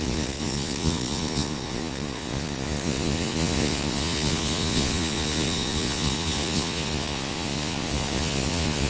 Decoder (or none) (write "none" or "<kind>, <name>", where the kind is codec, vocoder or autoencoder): vocoder, Vocos